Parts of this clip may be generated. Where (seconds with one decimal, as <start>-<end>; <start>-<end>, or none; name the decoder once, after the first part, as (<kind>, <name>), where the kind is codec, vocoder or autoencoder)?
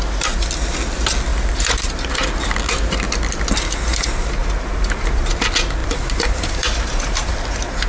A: 1.3-2.1 (vocoder, BigVGAN v2); 4.4-5.3; 5.8-7.3